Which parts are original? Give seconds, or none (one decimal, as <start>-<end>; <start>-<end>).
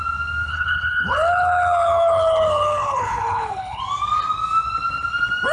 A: 0.0-0.5; 3.8-5.5